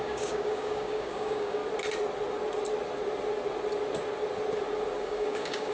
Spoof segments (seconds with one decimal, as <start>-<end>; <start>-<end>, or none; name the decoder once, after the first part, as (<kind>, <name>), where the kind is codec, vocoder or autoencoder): 0.0-1.6 (codec, DAC); 5.0-5.7